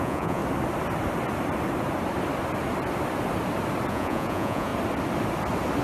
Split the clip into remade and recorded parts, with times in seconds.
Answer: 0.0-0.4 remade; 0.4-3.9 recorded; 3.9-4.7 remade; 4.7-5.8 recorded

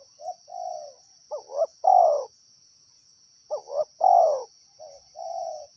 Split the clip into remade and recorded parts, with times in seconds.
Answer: 0.0-0.5 remade; 0.5-1.1 recorded; 1.1-5.8 remade

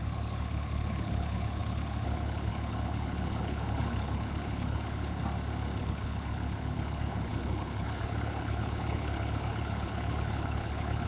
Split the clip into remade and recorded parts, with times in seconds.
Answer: 0.0-5.2 remade; 5.2-5.8 recorded; 5.8-11.1 remade

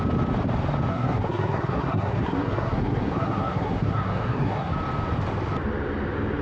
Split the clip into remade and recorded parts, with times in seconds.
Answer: 0.0-0.9 recorded; 0.9-4.7 remade; 4.7-6.4 recorded

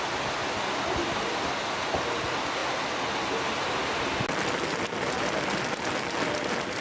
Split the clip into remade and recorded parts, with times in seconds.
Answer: 0.0-6.8 recorded